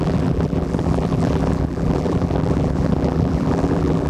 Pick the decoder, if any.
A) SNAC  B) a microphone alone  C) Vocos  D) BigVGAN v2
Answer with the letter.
D